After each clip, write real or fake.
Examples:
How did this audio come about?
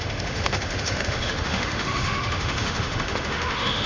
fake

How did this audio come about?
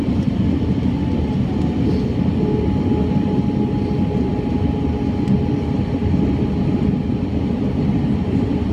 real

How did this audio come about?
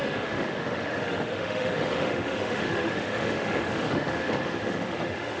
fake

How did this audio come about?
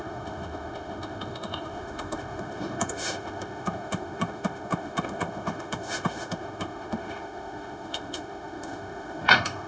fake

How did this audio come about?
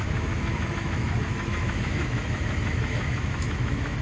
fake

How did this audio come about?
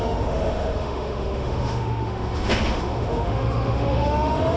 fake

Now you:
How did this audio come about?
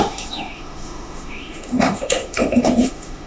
fake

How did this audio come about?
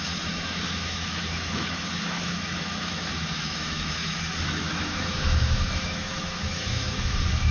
fake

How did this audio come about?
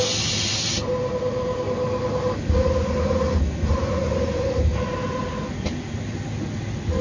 real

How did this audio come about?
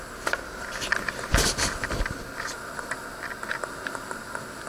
real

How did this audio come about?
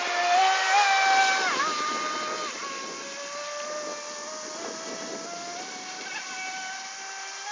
real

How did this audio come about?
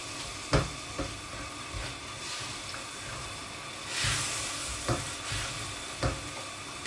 real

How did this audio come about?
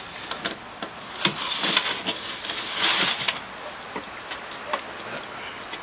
real